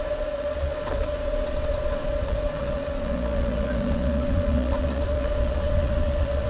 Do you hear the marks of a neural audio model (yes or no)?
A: yes